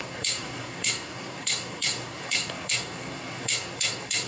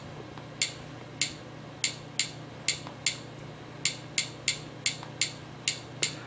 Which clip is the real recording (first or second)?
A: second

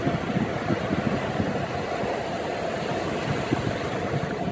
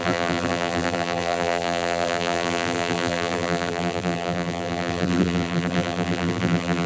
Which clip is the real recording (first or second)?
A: first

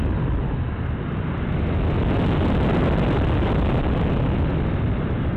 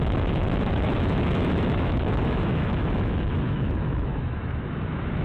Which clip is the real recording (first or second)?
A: first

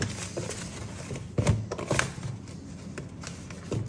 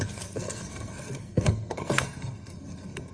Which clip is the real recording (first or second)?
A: first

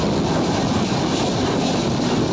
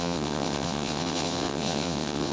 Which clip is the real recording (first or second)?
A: first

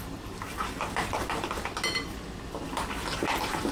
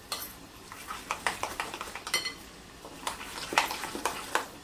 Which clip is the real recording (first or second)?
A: first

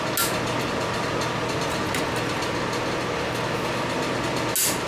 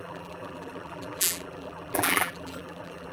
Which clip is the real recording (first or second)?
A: first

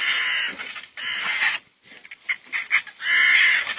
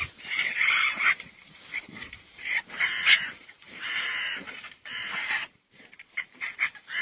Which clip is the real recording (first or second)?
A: first